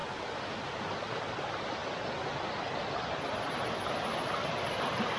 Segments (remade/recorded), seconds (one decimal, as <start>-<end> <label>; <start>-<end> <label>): 0.0-5.2 recorded